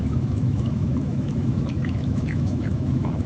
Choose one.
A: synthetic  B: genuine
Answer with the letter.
A